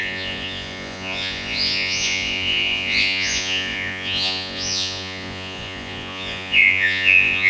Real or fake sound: fake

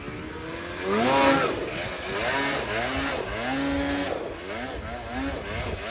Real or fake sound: real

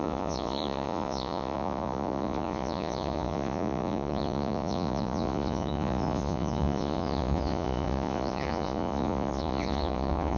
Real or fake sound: fake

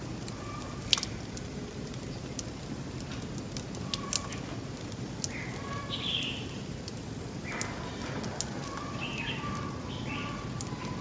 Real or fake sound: real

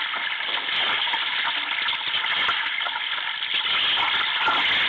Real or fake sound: real